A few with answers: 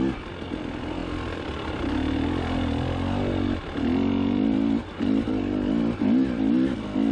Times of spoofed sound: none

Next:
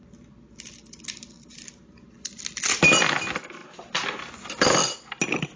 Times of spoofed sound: none

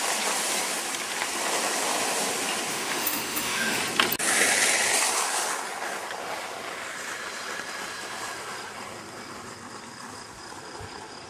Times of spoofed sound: 2.7-3.8 (autoencoder, DAC-VAE)

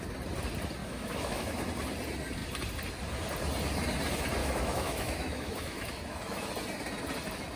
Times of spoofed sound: 0.8-1.7 (autoencoder, DAC-VAE); 4.4-6.5